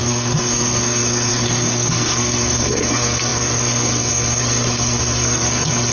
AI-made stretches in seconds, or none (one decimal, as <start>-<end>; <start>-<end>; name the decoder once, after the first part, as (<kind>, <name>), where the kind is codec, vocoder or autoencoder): 0.0-5.9 (codec, SNAC)